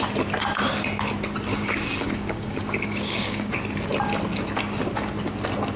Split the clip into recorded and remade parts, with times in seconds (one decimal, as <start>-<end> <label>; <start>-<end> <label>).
0.0-1.5 recorded; 1.5-3.5 remade; 3.5-5.8 recorded